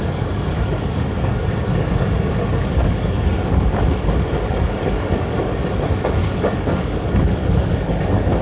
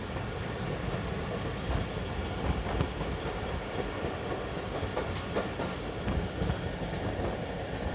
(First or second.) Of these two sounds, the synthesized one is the first